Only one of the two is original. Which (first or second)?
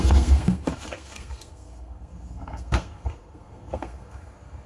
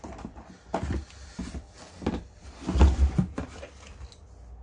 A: second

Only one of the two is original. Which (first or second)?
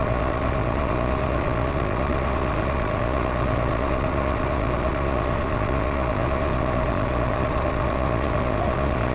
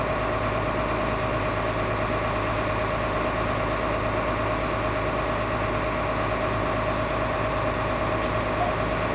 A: second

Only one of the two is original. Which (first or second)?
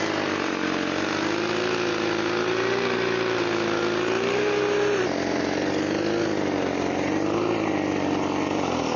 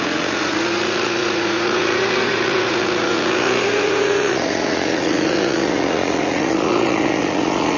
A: first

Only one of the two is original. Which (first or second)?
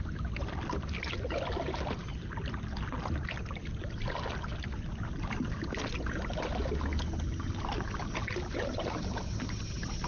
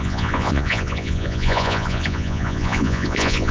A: first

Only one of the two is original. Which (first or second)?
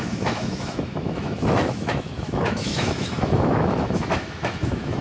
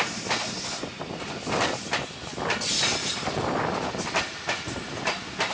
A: second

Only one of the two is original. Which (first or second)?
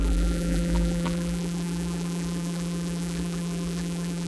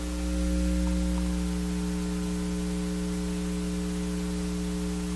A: second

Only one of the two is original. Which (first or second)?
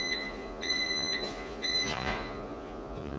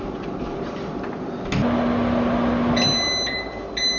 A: second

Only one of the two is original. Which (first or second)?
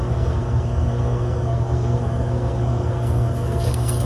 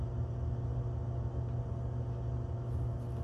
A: second